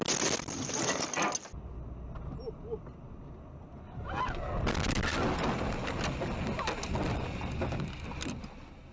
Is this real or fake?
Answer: real